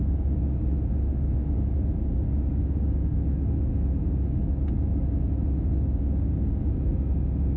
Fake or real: real